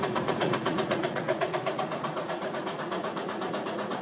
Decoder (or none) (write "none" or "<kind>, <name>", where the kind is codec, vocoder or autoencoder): vocoder, Vocos